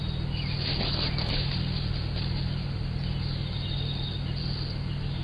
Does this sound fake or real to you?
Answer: real